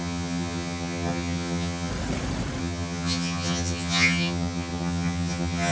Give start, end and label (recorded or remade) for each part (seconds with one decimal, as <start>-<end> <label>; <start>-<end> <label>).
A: 0.0-1.9 remade; 1.9-2.6 recorded; 2.6-5.7 remade